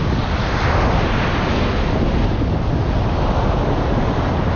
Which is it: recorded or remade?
recorded